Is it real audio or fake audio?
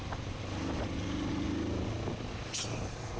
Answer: real